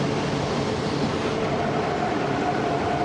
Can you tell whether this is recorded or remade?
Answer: recorded